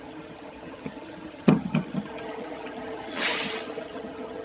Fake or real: fake